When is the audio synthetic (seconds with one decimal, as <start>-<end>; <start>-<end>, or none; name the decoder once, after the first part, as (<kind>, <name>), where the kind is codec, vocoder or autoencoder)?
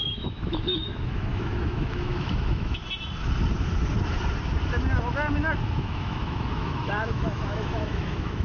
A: 0.0-2.8 (autoencoder, DAC-VAE); 5.7-8.4